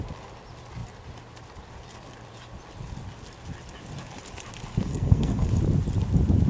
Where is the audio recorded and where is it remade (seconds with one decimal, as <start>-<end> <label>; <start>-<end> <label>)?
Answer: 0.0-4.7 recorded; 4.7-5.5 remade; 5.5-6.5 recorded